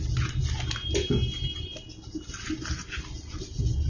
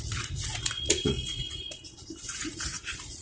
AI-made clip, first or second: second